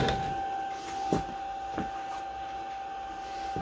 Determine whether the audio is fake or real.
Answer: real